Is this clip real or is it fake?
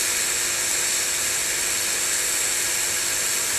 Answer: real